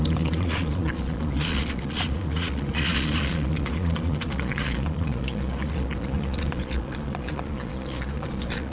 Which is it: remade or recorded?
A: remade